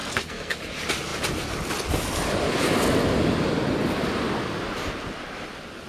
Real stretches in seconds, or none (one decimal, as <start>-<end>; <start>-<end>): 0.6-5.9